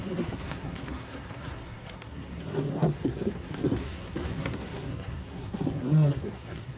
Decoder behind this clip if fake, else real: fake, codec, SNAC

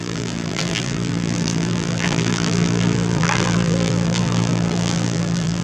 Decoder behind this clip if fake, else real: fake, vocoder, BigVGAN v2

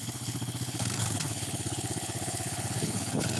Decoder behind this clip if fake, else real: fake, codec, HILCodec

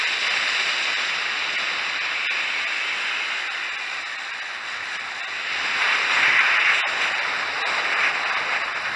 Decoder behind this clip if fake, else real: real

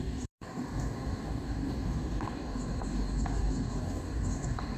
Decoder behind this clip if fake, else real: fake, codec, DAC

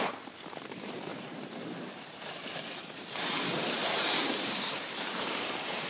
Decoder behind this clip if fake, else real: fake, vocoder, BigVGAN v2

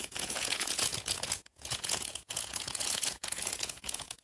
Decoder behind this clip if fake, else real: fake, vocoder, Vocos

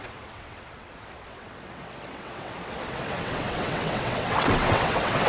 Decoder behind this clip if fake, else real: fake, vocoder, WaveNeXt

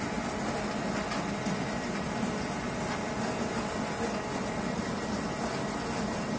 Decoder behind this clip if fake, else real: real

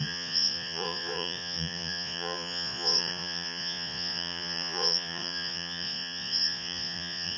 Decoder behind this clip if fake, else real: fake, vocoder, Vocos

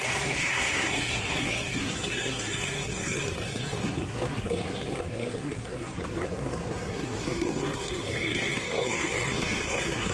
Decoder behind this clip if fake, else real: fake, codec, SNAC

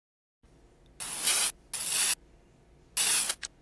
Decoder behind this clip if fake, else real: real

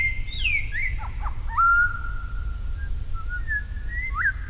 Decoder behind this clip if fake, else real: real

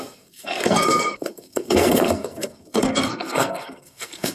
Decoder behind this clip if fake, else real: fake, codec, SNAC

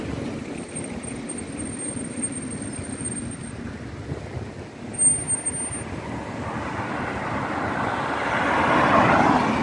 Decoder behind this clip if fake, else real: real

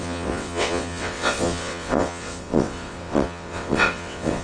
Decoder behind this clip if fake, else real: fake, vocoder, WaveNeXt